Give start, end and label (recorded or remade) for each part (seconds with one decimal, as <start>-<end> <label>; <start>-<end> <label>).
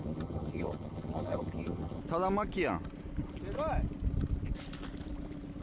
0.0-2.0 remade; 2.0-5.6 recorded